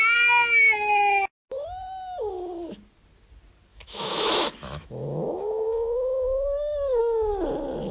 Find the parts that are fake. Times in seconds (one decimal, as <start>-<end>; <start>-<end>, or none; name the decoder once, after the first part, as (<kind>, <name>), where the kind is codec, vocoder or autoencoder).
3.7-7.0 (autoencoder, DAC-VAE)